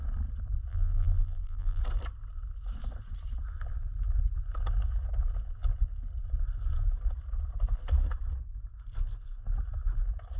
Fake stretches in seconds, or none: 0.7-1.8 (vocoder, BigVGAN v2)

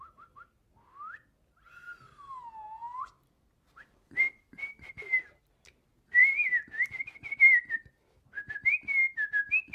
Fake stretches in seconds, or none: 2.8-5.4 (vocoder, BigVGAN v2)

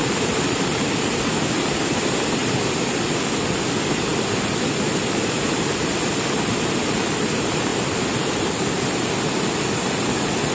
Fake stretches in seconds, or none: 0.0-0.7 (vocoder, BigVGAN v2); 2.4-2.9; 7.7-8.8

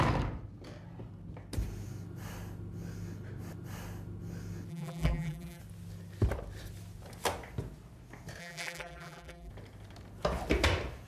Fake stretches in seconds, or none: 4.7-5.6 (vocoder, BigVGAN v2); 8.4-9.5